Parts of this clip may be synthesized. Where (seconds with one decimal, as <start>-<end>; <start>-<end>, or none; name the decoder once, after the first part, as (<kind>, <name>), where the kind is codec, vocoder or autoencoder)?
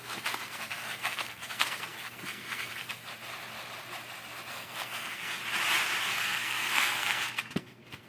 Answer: 0.0-3.1 (codec, SNAC); 4.5-5.4; 6.0-8.1